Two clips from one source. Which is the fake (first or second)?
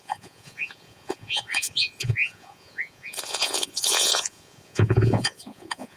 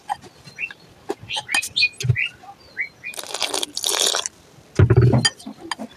first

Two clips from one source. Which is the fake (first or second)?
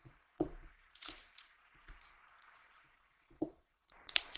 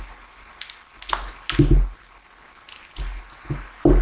first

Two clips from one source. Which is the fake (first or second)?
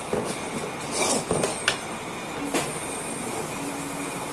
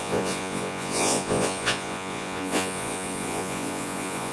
second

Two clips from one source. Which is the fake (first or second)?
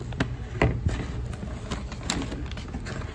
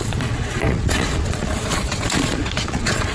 second